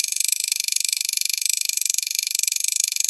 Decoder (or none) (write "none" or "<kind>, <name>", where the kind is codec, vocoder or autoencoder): vocoder, BigVGAN v2